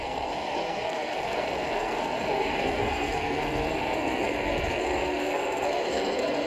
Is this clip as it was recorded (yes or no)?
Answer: no